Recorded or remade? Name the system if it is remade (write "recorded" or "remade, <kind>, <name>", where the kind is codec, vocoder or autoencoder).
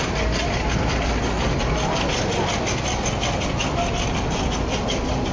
recorded